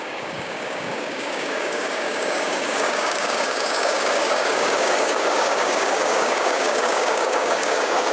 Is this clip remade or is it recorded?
remade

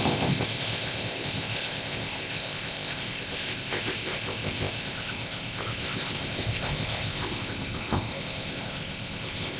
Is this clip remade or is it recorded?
remade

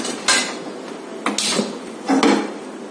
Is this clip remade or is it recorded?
recorded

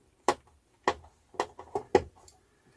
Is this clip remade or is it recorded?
recorded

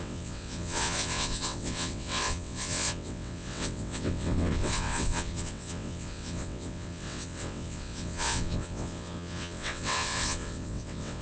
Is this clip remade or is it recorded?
remade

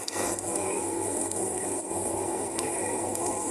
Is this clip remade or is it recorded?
remade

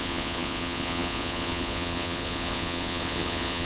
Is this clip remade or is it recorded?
remade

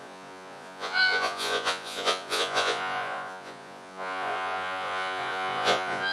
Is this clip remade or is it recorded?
remade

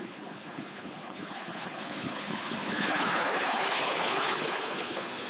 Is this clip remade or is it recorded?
remade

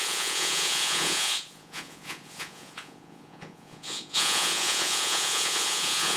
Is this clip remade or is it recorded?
remade